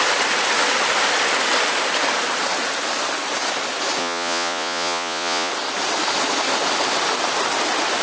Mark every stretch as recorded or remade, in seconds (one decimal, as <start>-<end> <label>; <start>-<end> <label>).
0.0-4.0 recorded; 4.0-5.5 remade; 5.5-8.0 recorded